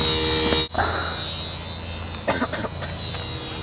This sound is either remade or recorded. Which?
recorded